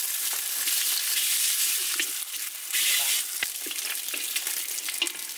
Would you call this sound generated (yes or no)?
no